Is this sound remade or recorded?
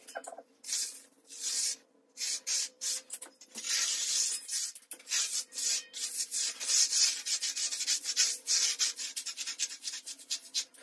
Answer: remade